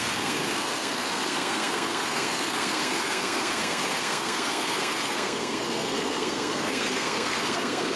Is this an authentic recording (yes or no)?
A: no